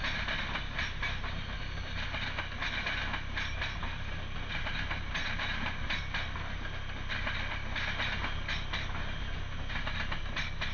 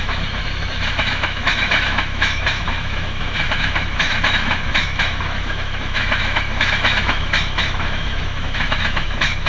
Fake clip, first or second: second